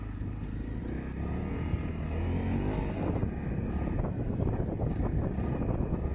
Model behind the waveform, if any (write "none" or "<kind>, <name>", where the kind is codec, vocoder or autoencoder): none